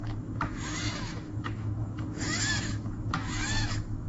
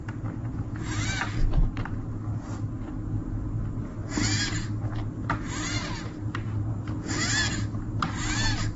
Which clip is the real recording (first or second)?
second